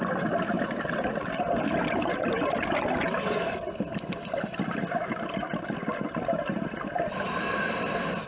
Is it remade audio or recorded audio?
recorded